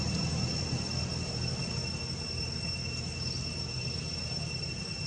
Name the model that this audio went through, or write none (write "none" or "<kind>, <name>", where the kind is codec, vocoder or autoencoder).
none